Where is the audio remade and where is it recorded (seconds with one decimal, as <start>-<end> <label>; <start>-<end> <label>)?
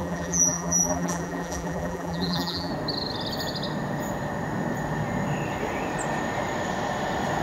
0.0-2.7 remade; 2.7-7.4 recorded